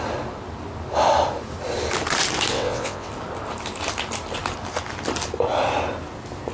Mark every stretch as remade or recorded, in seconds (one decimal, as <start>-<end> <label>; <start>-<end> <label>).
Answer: 0.0-2.5 recorded; 2.5-3.1 remade; 3.1-6.5 recorded